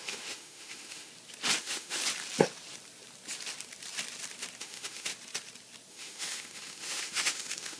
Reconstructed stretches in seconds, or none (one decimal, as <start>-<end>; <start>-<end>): 0.0-1.1; 1.6-2.0; 4.6-5.1; 5.9-7.8